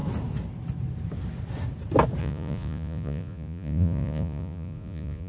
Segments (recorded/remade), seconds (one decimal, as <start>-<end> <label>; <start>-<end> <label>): 0.0-2.2 recorded; 2.2-5.3 remade